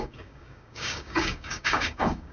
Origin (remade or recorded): remade